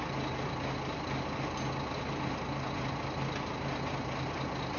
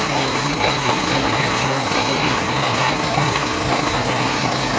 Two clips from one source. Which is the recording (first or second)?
first